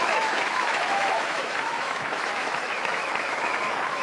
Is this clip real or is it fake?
fake